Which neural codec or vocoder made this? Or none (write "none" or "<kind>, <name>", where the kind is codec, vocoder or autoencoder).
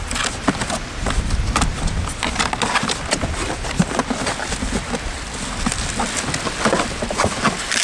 none